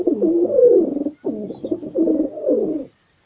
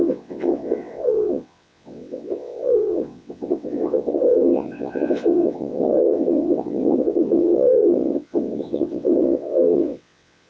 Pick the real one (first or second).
first